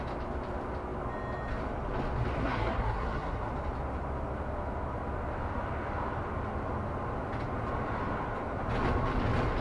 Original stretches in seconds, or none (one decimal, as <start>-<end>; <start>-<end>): 0.0-2.4; 3.5-9.6